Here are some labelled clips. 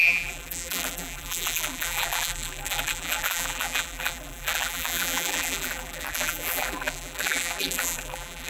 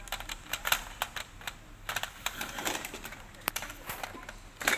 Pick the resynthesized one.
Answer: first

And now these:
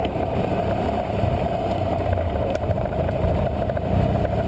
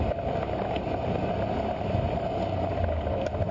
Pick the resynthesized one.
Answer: first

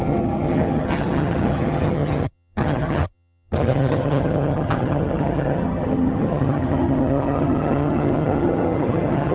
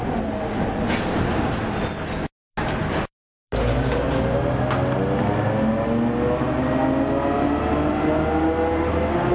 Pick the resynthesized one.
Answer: first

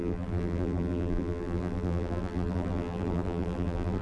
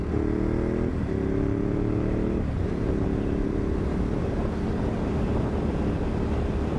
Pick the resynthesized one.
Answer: first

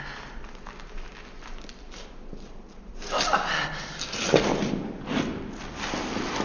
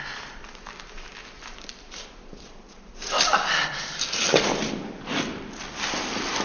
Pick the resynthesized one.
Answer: second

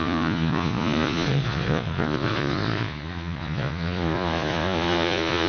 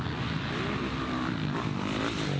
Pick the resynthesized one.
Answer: first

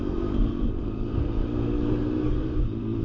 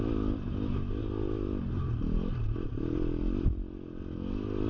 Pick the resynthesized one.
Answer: first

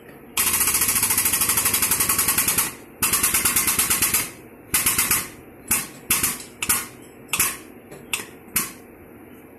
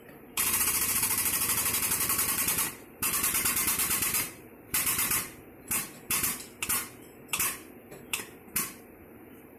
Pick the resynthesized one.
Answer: second